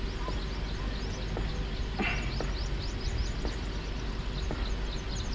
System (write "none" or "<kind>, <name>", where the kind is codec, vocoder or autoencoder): none